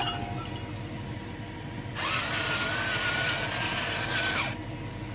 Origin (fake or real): real